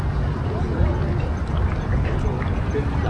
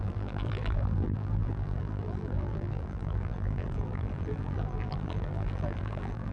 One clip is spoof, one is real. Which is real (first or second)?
first